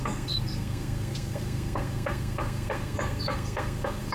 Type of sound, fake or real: fake